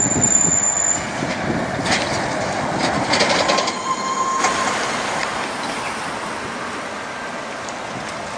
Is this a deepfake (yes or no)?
no